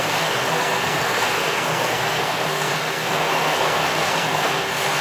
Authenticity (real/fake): fake